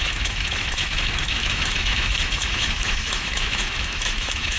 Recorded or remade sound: remade